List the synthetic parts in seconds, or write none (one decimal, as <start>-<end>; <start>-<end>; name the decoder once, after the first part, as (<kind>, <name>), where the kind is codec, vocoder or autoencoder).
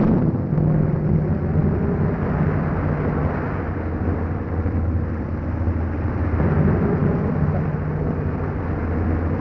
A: none